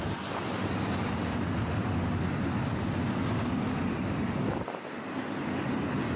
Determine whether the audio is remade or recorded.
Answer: recorded